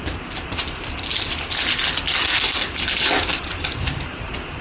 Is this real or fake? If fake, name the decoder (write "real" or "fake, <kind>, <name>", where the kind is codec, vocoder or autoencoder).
real